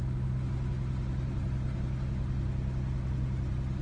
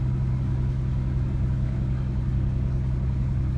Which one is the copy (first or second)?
second